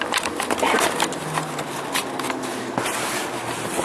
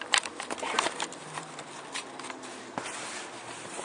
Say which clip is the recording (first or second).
first